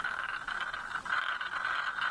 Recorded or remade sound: recorded